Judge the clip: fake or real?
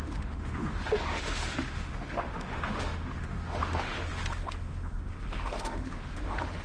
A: fake